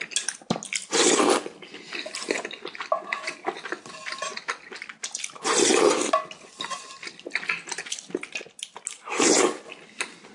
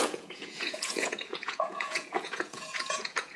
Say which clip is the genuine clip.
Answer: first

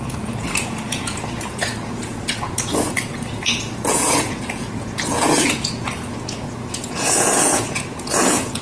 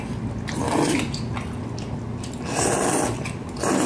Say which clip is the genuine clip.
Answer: second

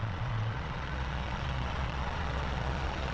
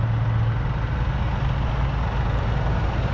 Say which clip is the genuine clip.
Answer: second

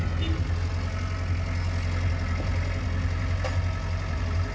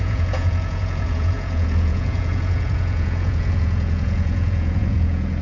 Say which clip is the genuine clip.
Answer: first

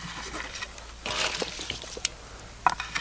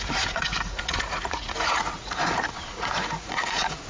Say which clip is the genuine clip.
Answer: first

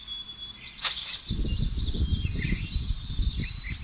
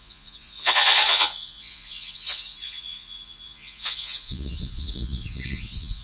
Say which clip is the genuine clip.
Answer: first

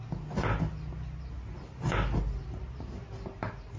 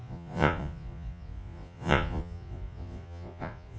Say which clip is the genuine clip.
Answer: first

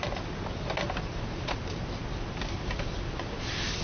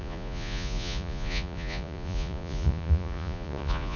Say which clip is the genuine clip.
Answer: first